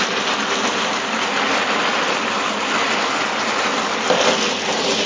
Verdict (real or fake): real